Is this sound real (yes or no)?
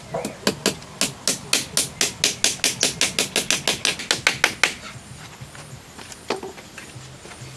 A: yes